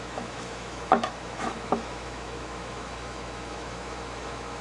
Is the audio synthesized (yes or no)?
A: yes